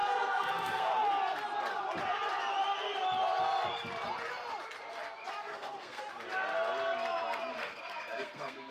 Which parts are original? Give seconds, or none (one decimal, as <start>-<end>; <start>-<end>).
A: 0.9-5.4; 6.0-7.5

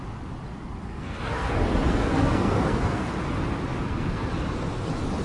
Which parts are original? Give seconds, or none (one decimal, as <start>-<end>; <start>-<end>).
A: 0.0-0.9; 1.5-1.9; 3.1-3.7; 4.3-5.2

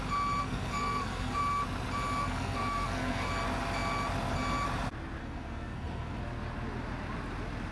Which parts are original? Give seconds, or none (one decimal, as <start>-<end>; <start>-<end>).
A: 0.0-0.4; 1.4-2.2; 3.3-5.2; 6.2-7.7

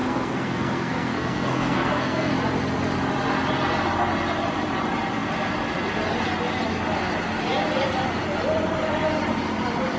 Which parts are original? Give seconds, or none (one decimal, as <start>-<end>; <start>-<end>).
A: 2.3-10.0

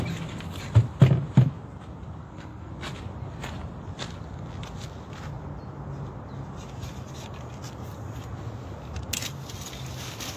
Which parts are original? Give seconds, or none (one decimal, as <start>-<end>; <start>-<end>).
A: 0.0-2.2; 2.7-10.4

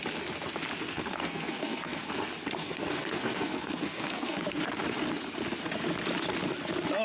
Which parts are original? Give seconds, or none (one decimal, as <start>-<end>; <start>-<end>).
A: 0.0-0.9; 2.1-2.6; 4.6-7.0